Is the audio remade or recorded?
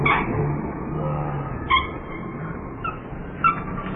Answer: recorded